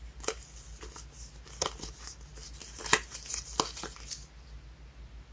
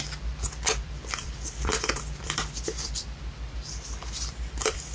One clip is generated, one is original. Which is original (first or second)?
first